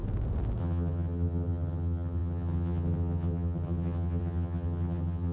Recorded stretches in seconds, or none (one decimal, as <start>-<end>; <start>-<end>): 0.0-0.6